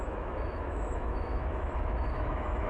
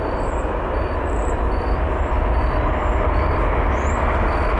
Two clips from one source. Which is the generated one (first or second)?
first